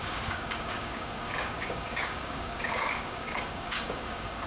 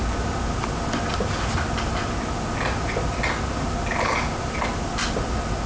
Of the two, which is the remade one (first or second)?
first